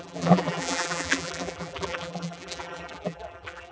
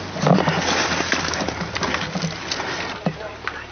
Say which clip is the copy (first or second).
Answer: first